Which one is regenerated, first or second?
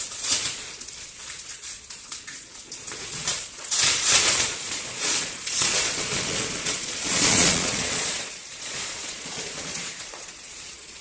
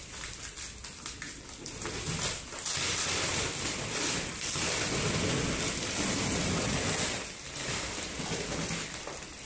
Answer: first